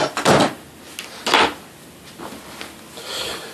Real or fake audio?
real